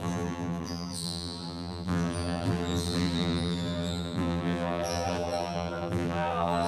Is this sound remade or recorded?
remade